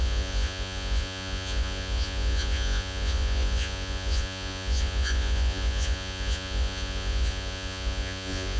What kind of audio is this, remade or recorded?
remade